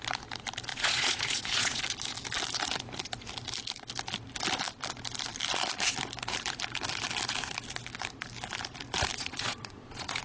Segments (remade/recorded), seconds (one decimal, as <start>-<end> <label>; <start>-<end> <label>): 0.0-0.7 recorded; 0.7-1.8 remade; 1.8-9.1 recorded; 9.1-10.2 remade